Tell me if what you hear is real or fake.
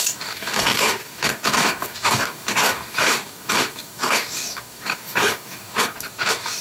fake